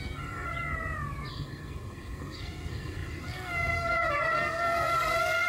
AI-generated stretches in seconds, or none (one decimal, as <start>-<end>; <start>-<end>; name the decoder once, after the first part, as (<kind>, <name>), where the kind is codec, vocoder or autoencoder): 0.0-0.5 (codec, SNAC); 1.3-5.5